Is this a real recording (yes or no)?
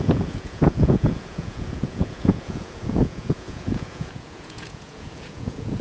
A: no